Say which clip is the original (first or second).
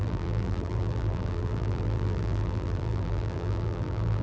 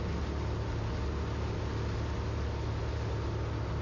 second